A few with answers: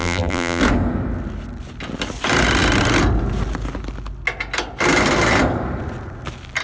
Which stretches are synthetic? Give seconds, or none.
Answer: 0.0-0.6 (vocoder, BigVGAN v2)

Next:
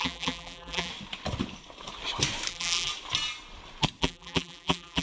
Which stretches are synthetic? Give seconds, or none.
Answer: 0.0-0.9 (vocoder, BigVGAN v2); 2.5-2.9; 4.0-5.0

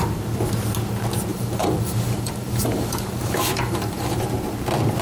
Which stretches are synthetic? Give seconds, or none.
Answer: 1.3-4.2 (vocoder, BigVGAN v2)

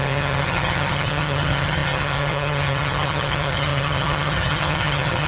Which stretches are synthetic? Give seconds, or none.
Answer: 0.0-5.3 (vocoder, HiFi-GAN)

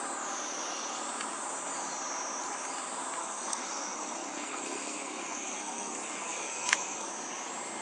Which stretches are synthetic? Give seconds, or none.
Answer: 3.2-7.1 (codec, SNAC)

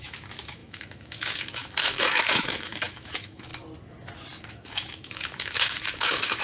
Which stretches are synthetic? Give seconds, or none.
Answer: 0.0-3.5 (autoencoder, DAC-VAE); 4.5-6.4

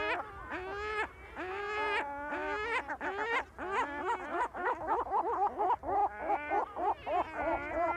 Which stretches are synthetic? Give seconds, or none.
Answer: 4.3-5.0 (autoencoder, DAC-VAE); 6.0-6.5